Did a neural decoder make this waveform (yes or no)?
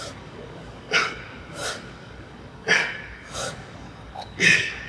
yes